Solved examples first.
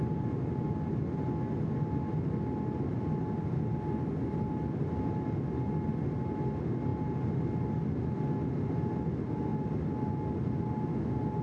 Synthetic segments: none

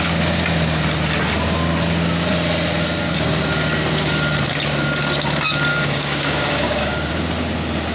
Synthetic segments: 5.7-7.1 (codec, DAC)

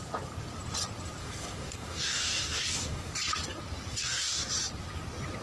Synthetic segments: 1.2-3.1 (codec, DAC); 3.9-4.5

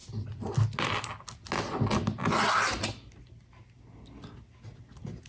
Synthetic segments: none

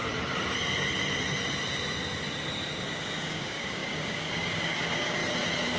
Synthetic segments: 2.7-5.2 (codec, DAC)